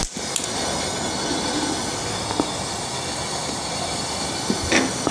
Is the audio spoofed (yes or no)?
no